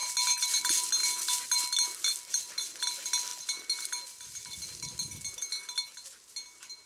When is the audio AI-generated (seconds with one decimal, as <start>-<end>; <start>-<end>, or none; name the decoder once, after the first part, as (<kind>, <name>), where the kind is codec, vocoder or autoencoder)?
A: none

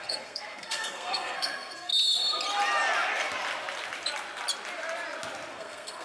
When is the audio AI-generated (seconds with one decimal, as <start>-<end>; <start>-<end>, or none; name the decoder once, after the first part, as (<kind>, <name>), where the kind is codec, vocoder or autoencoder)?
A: 0.0-1.9 (codec, SNAC); 5.5-6.0

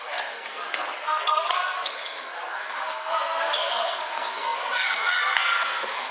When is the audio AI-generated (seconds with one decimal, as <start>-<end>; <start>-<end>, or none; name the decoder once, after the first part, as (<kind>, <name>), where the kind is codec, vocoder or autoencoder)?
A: 0.0-6.1 (codec, SNAC)